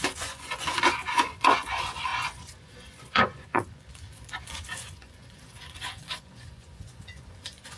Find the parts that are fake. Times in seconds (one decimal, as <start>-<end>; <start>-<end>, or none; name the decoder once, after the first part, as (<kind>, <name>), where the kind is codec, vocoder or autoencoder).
0.0-7.8 (vocoder, Vocos)